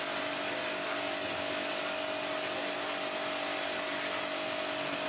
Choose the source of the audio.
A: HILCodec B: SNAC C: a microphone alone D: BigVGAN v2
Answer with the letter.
C